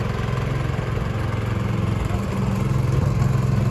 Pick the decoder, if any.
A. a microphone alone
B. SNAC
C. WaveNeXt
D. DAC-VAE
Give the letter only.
A